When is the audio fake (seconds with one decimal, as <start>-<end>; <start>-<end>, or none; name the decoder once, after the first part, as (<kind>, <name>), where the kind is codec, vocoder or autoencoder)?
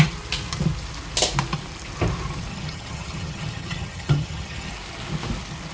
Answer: 2.5-4.7 (vocoder, HiFi-GAN)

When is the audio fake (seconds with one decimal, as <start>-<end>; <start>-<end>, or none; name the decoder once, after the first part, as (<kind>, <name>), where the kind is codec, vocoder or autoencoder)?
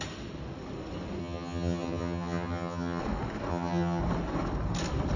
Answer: 1.2-3.0 (vocoder, HiFi-GAN); 3.5-4.0